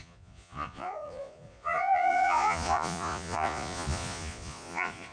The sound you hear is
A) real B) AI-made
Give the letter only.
B